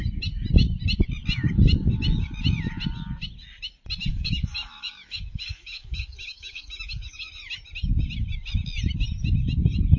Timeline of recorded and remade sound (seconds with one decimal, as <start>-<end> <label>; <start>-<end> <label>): 0.0-4.1 recorded; 4.1-7.3 remade; 7.3-10.0 recorded